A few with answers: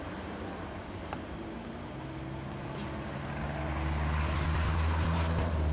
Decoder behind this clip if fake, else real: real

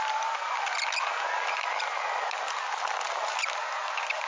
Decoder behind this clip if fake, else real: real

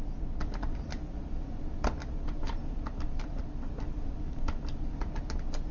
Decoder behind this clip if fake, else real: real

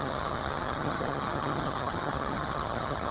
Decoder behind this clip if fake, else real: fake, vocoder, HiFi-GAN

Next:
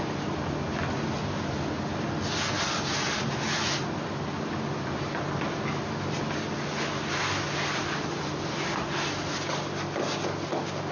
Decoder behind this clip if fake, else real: real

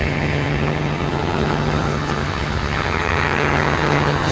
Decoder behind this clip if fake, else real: fake, vocoder, HiFi-GAN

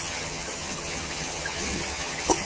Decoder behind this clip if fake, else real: fake, vocoder, HiFi-GAN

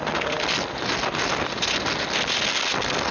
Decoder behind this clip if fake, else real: real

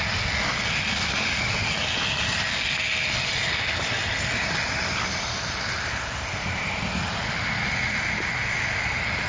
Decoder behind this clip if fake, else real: real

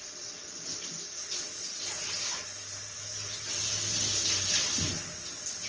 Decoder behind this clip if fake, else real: real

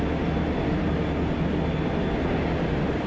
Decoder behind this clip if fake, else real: real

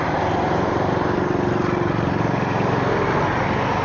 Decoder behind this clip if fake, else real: real